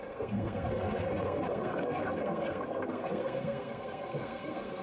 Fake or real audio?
fake